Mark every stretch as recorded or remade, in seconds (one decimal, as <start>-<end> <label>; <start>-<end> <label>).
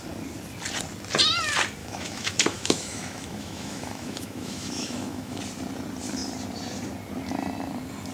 0.0-1.8 recorded; 1.8-5.4 remade; 5.4-8.1 recorded